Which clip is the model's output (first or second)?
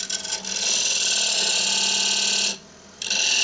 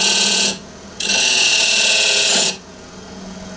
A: second